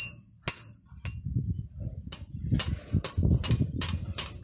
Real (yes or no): yes